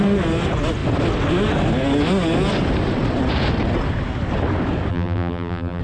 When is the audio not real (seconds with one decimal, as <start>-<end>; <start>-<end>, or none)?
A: 4.9-5.8